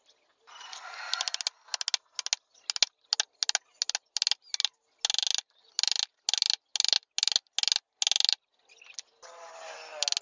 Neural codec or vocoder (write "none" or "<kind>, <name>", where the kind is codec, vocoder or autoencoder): none